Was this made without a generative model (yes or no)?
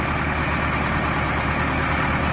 yes